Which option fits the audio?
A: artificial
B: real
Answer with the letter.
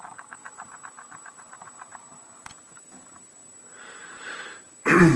A